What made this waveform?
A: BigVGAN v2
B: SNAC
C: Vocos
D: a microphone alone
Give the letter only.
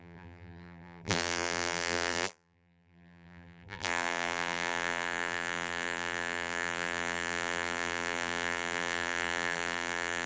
A